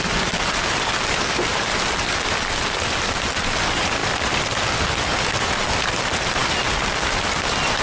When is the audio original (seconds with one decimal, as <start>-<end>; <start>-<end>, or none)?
0.0-7.8